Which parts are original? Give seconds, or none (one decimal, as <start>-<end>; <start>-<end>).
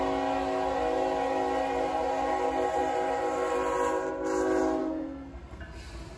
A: 0.0-4.8; 5.6-6.2